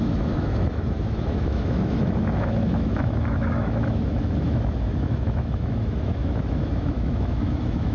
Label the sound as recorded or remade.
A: remade